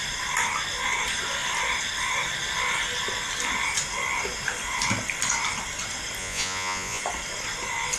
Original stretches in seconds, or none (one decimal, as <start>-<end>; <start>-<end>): 0.0-6.2; 7.0-8.0